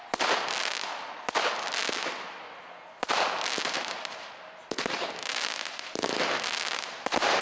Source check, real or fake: real